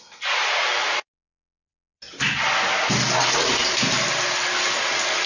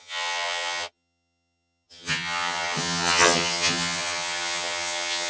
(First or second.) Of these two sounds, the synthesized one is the second